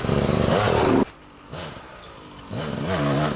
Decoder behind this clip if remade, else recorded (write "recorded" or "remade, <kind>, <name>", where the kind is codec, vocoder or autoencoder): recorded